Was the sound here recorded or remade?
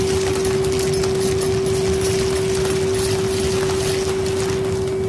recorded